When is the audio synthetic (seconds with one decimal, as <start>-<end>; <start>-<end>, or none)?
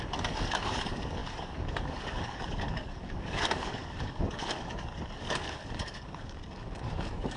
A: 0.0-7.4